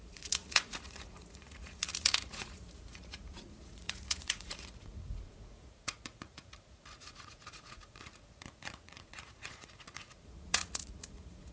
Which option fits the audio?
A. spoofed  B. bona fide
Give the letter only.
A